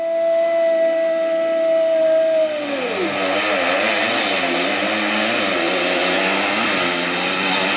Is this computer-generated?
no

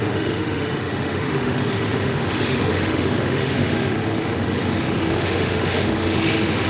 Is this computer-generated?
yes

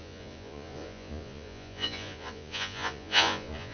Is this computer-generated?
yes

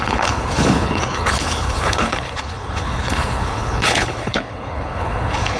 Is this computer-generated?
yes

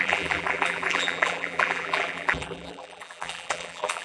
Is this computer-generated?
yes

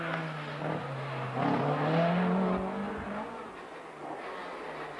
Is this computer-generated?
no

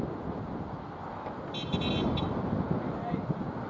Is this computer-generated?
no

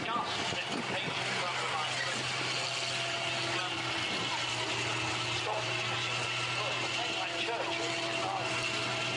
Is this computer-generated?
no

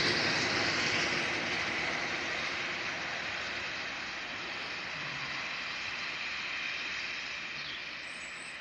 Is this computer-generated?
no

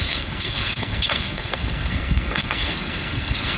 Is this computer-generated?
yes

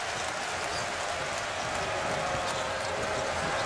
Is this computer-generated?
no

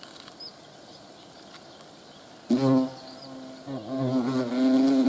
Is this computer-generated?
no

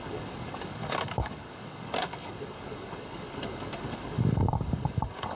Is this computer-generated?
yes